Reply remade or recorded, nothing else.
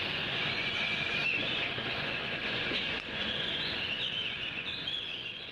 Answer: remade